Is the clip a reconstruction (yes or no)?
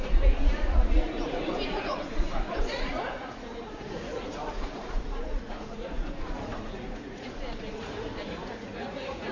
yes